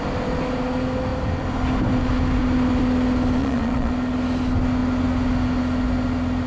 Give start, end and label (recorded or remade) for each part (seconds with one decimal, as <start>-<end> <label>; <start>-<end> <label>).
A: 0.0-3.4 recorded; 3.4-3.9 remade; 3.9-6.5 recorded